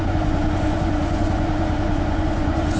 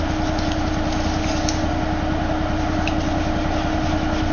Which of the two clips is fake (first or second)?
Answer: first